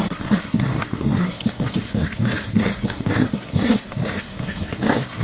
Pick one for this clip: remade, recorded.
remade